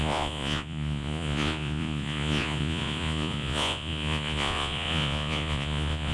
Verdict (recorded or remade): remade